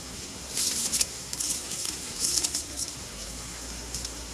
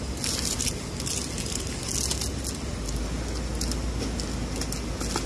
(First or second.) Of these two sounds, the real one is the second